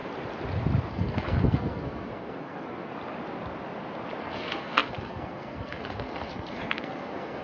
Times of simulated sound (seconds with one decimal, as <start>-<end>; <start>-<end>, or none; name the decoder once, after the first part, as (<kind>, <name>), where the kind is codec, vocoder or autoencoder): 0.9-2.9 (codec, SNAC); 4.2-7.4